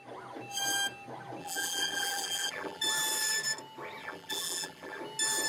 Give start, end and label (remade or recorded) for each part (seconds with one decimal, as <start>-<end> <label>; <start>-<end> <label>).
0.0-1.4 recorded; 1.4-2.8 remade; 2.8-4.0 recorded; 4.0-5.0 remade; 5.0-5.5 recorded